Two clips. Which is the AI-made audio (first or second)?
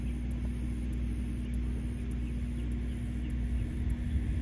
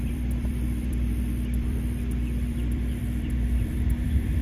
second